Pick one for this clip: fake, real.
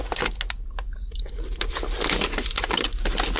real